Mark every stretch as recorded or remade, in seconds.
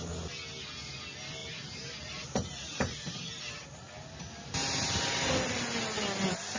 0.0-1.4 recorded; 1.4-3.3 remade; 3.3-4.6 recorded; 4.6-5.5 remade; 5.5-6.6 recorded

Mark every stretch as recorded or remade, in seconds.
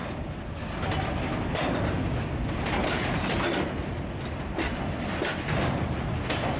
0.0-6.6 recorded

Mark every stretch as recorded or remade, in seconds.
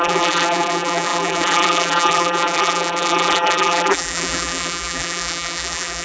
0.0-6.0 remade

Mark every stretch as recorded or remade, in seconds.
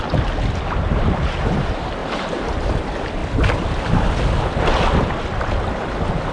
0.0-2.0 recorded; 2.0-2.5 remade; 2.5-6.3 recorded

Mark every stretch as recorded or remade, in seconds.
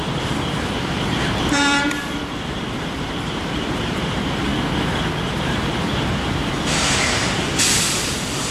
0.0-4.5 remade; 4.5-5.4 recorded; 5.4-8.5 remade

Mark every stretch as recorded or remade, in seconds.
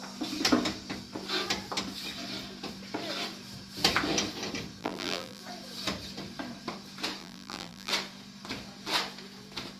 0.0-4.8 recorded; 4.8-5.4 remade; 5.4-7.2 recorded; 7.2-7.9 remade; 7.9-9.8 recorded